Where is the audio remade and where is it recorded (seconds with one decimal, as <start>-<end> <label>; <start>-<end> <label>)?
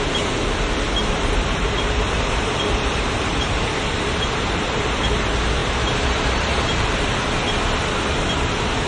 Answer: 0.0-1.0 recorded; 1.0-5.0 remade; 5.0-5.6 recorded; 5.6-7.1 remade; 7.1-8.9 recorded